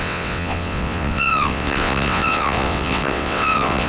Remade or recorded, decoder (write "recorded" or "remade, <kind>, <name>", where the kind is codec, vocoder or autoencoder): remade, vocoder, WaveNeXt